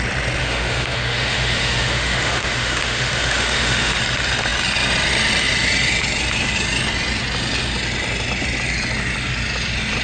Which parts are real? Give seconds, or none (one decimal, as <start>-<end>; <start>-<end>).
0.0-0.4; 4.0-10.0